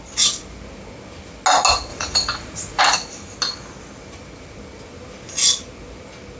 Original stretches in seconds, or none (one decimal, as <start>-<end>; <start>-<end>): 0.0-1.9; 2.8-6.4